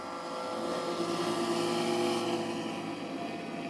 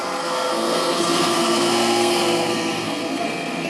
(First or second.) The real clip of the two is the first